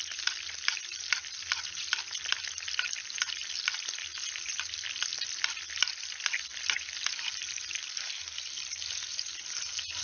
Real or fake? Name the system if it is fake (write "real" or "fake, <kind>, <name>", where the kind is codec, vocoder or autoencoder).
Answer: real